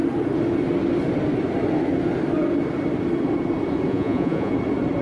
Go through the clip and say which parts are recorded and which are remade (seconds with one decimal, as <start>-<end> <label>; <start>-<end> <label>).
0.0-3.9 recorded; 3.9-4.5 remade; 4.5-5.0 recorded

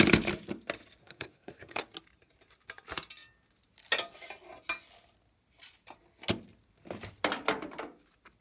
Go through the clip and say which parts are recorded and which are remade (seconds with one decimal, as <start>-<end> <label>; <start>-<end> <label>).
0.0-1.0 recorded; 1.0-1.8 remade; 1.8-8.4 recorded

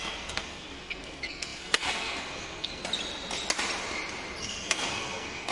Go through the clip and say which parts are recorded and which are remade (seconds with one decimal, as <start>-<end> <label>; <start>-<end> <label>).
0.0-2.8 remade; 2.8-4.4 recorded; 4.4-5.5 remade

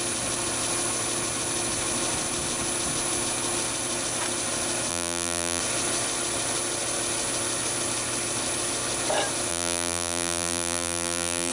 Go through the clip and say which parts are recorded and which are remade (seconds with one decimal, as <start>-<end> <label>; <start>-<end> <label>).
0.0-4.9 recorded; 4.9-5.6 remade; 5.6-9.5 recorded; 9.5-11.5 remade

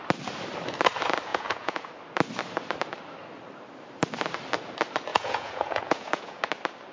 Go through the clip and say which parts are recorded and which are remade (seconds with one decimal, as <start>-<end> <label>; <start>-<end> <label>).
0.0-1.3 recorded; 1.3-1.9 remade; 1.9-5.1 recorded; 5.1-6.4 remade; 6.4-6.9 recorded

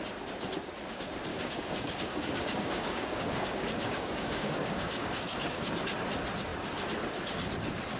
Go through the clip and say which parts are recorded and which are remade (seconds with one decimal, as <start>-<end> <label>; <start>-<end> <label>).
0.0-1.3 recorded; 1.3-5.7 remade; 5.7-8.0 recorded